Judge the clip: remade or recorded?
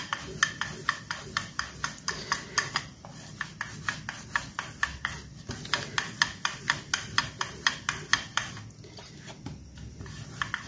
recorded